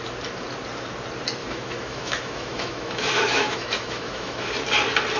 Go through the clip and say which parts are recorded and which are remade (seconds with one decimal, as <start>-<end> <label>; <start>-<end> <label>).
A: 0.0-1.4 recorded; 1.4-4.5 remade; 4.5-5.2 recorded